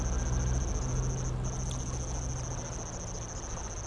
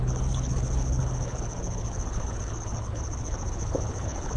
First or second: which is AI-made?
second